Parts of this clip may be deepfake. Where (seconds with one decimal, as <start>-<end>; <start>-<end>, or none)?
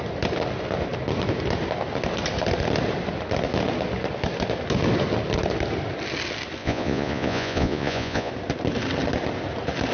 6.6-8.3